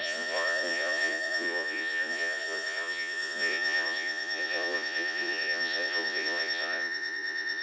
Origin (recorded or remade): remade